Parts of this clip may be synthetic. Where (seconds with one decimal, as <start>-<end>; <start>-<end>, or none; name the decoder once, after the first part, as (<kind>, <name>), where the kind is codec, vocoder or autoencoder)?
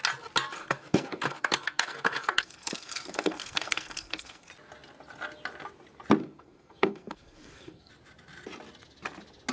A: 0.6-4.5 (codec, SNAC); 6.2-7.9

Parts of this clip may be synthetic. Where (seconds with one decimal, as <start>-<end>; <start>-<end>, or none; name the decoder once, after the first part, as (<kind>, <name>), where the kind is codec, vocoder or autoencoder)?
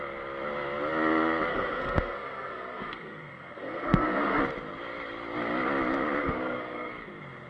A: 1.5-4.4 (codec, SNAC); 6.2-6.9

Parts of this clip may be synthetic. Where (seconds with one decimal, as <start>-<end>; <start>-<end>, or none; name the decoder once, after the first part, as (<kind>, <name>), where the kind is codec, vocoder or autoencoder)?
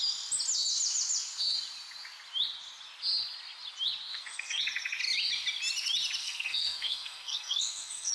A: 4.1-4.6 (codec, SNAC); 6.2-8.1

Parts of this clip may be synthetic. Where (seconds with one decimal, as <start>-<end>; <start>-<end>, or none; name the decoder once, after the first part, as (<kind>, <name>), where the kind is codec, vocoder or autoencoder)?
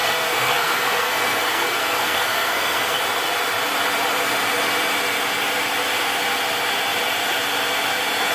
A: 0.0-3.0 (codec, SNAC)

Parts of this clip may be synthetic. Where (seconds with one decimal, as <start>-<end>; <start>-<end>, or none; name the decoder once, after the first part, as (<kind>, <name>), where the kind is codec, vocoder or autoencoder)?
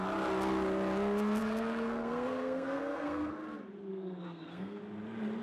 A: 1.4-3.3 (codec, SNAC); 3.9-4.8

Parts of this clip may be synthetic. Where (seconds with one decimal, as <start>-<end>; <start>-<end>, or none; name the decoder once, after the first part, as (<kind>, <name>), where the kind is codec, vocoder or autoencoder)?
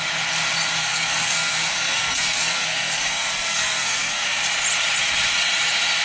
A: 0.8-4.4 (codec, SNAC)